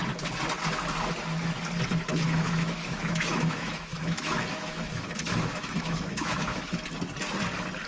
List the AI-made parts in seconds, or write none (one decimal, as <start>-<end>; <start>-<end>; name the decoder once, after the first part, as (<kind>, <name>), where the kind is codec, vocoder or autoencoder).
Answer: 2.1-6.8 (autoencoder, DAC-VAE)